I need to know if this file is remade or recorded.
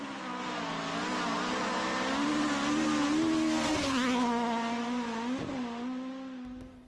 recorded